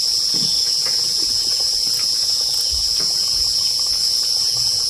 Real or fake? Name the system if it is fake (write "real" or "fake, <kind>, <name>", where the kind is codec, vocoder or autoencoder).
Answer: fake, vocoder, Vocos